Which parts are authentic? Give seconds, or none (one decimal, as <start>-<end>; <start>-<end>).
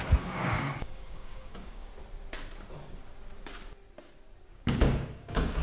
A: 1.9-4.5